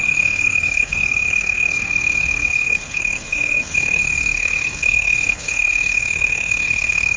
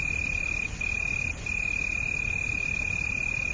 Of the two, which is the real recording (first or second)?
second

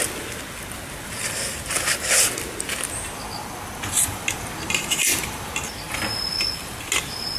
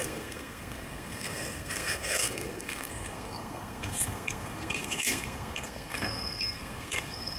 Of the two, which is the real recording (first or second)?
first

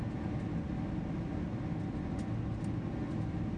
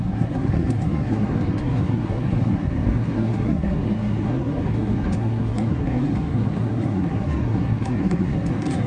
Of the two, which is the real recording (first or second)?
first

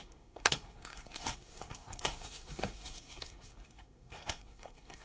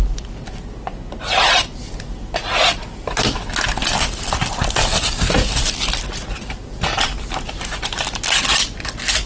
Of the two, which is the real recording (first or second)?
second